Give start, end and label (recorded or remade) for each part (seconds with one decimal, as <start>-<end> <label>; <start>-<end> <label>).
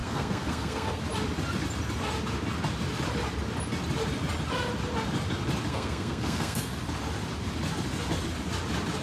0.0-1.0 remade; 1.0-5.7 recorded; 5.7-6.7 remade; 6.7-9.0 recorded